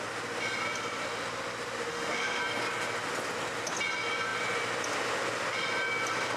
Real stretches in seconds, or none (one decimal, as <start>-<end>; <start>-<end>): 0.0-1.9; 2.4-6.4